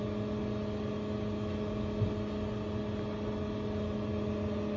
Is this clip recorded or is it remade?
recorded